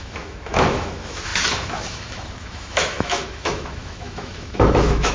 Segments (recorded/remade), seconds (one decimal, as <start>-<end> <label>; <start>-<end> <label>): 0.0-5.1 remade